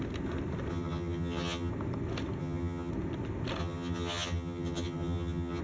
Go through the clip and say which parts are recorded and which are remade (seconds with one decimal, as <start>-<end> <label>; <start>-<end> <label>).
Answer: 0.0-0.7 recorded; 0.7-1.7 remade; 1.7-2.4 recorded; 2.4-2.9 remade; 2.9-3.6 recorded; 3.6-5.6 remade